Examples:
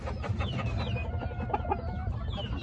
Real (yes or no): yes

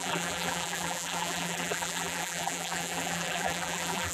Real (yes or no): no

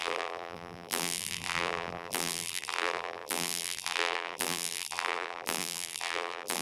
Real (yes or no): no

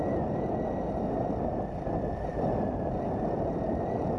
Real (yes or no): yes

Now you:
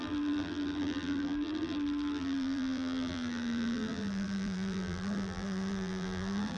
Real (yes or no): no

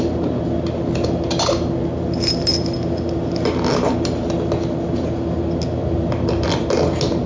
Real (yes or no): yes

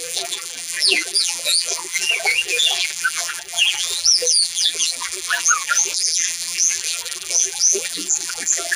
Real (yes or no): no